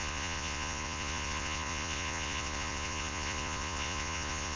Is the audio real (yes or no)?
no